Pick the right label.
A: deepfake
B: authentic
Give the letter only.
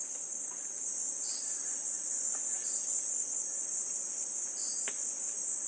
B